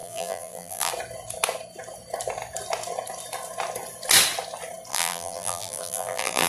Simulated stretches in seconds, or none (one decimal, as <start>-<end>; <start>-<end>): 0.0-0.9; 4.9-6.5